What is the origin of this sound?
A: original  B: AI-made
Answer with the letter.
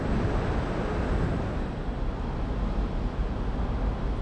A